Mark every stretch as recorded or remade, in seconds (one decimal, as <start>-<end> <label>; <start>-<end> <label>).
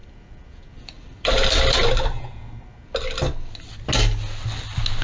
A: 0.0-2.2 remade; 2.2-5.0 recorded